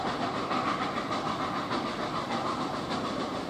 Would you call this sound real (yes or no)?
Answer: yes